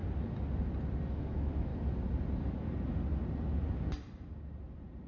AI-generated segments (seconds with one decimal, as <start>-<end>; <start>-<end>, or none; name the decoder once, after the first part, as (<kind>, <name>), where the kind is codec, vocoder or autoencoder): 1.1-1.7 (autoencoder, DAC-VAE)

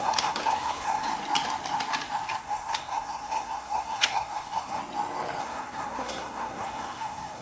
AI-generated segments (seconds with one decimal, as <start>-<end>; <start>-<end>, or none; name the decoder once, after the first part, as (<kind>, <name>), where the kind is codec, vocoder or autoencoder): 0.0-1.1 (codec, SNAC); 2.4-4.8; 5.4-7.4

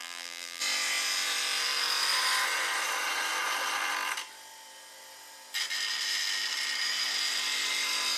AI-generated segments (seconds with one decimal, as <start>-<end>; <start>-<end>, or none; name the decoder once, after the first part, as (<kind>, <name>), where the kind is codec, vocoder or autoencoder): 0.0-0.6 (vocoder, BigVGAN v2)

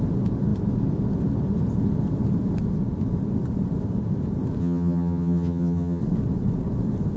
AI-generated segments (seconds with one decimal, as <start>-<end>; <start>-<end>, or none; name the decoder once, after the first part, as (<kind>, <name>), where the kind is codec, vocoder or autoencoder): 4.6-6.0 (vocoder, HiFi-GAN)

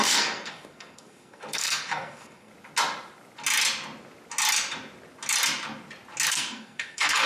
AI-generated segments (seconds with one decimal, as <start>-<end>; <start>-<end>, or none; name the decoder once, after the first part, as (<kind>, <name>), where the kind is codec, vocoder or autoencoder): 0.0-2.5 (codec, SNAC); 6.3-7.3

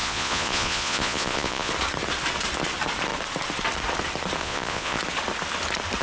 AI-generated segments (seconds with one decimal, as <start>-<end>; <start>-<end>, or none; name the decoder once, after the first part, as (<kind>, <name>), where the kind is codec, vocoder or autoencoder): 0.0-1.7 (vocoder, Vocos); 4.4-5.0

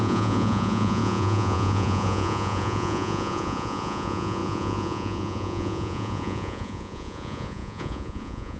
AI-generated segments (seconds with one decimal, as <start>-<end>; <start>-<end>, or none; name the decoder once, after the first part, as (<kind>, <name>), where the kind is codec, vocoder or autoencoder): 0.0-8.6 (vocoder, Vocos)